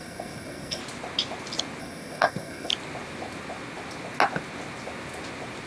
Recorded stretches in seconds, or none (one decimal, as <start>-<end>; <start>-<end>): 0.8-1.8; 2.7-5.7